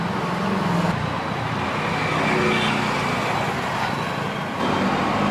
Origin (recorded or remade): recorded